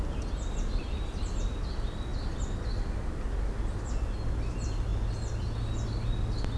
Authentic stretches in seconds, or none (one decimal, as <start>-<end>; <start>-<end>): 0.0-6.6